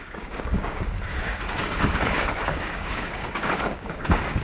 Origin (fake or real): fake